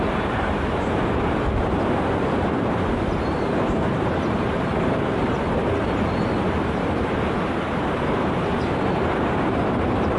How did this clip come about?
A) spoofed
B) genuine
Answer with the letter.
A